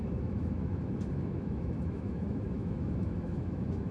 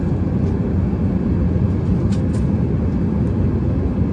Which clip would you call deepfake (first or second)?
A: first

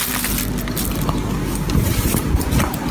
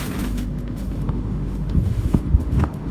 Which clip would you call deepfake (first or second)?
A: second